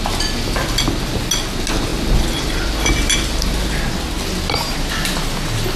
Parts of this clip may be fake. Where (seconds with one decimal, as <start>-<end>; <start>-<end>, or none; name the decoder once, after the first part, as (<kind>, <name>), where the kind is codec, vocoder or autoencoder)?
none